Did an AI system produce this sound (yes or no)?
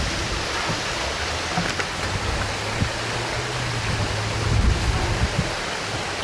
no